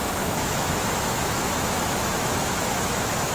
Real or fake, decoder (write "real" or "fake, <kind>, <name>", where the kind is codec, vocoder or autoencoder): fake, autoencoder, DAC-VAE